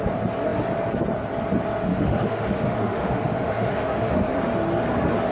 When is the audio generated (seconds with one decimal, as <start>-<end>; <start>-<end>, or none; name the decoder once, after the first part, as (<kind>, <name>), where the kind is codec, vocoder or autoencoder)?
1.9-4.4 (autoencoder, DAC-VAE)